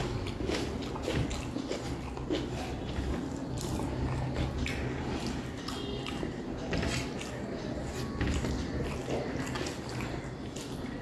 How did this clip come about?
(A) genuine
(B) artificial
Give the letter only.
A